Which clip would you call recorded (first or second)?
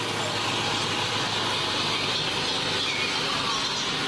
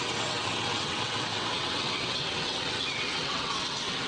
first